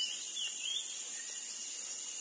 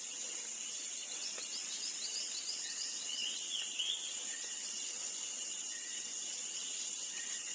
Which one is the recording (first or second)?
first